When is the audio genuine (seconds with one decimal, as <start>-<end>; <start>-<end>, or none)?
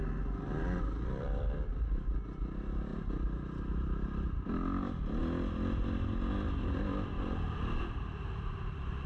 0.0-9.1